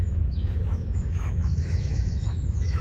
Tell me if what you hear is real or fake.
fake